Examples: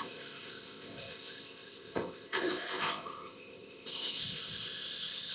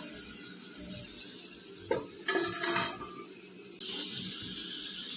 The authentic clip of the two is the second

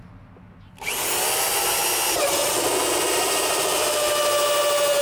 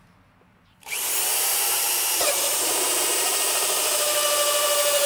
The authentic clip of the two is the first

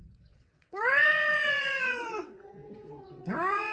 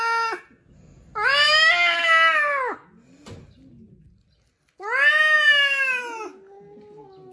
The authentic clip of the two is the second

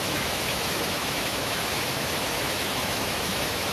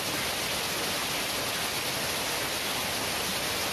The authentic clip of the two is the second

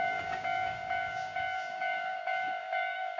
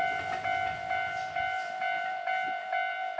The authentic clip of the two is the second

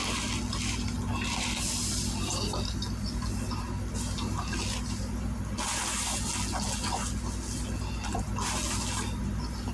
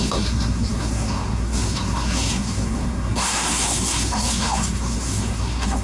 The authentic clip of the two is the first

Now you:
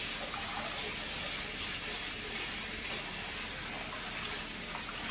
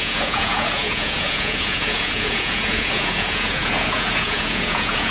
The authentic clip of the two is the first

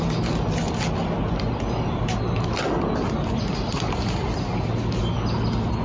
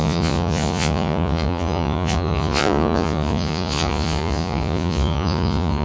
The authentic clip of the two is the first